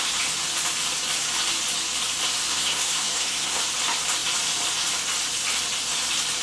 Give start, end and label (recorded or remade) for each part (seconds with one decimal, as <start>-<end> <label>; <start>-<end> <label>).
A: 0.0-2.5 recorded; 2.5-3.6 remade; 3.6-6.4 recorded